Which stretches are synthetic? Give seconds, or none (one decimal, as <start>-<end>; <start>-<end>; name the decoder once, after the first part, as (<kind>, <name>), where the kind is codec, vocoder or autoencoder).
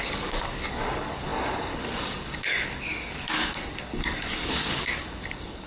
0.0-5.7 (codec, DAC)